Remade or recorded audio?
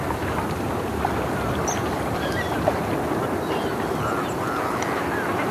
recorded